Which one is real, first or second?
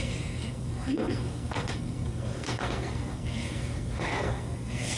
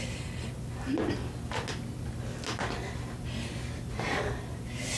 second